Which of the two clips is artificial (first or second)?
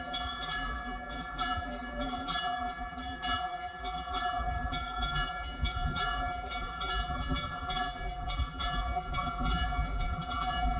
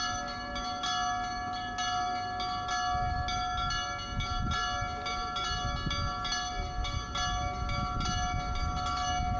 first